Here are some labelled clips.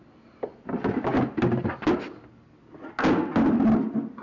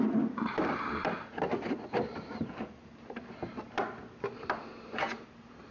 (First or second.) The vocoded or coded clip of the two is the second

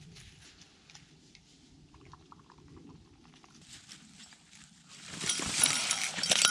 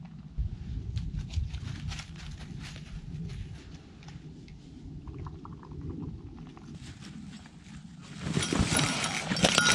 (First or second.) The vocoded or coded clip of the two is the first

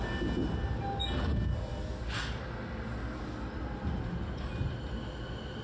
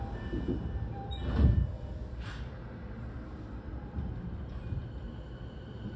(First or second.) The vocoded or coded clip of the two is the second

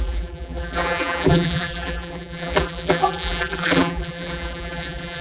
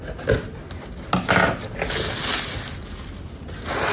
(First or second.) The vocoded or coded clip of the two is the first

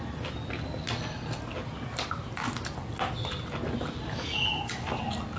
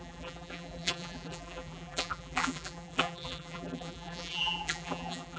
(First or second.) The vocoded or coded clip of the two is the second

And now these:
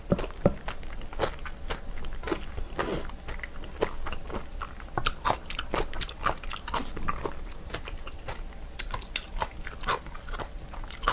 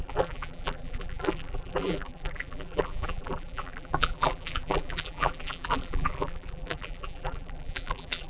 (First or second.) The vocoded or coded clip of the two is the second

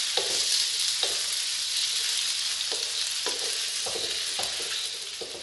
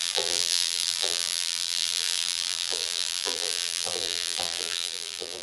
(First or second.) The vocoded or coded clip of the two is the second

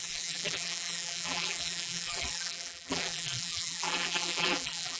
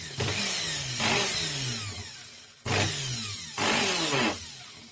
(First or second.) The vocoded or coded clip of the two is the first